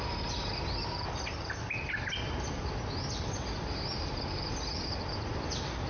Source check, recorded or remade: recorded